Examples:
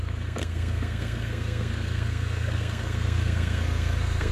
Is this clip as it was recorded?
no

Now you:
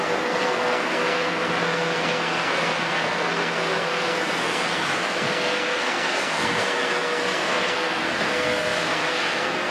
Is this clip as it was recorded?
no